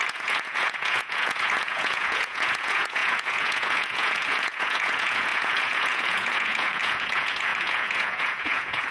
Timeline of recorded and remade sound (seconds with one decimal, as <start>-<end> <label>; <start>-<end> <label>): 0.0-8.9 remade